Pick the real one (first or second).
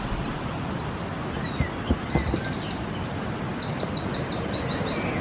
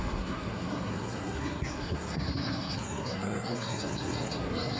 first